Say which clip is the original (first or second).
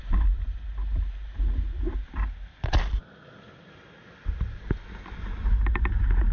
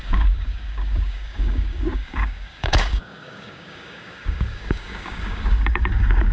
first